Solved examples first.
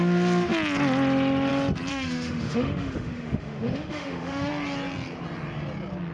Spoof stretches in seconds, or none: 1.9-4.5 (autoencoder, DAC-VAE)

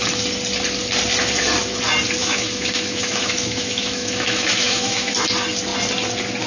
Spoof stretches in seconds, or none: 2.2-5.1 (autoencoder, DAC-VAE)

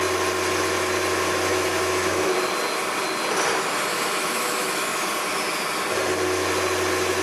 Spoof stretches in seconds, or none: 1.5-2.5 (autoencoder, DAC-VAE); 3.9-5.1

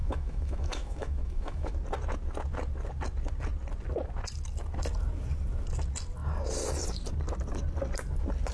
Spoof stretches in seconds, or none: 0.0-1.7 (autoencoder, DAC-VAE)